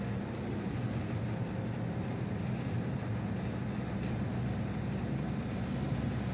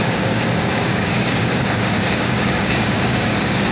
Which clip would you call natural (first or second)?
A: first